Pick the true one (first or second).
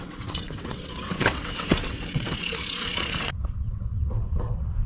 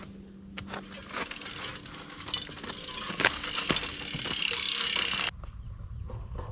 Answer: second